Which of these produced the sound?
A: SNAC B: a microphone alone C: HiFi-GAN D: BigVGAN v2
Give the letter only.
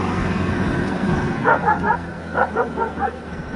A